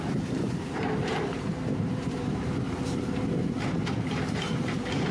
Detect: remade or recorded remade